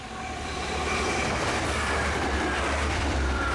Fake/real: fake